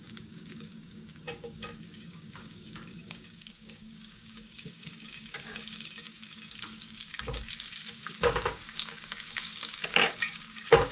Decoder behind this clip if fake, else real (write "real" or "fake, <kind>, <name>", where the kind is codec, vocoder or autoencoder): fake, codec, DAC